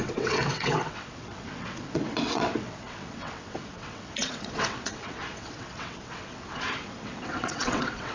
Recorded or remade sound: remade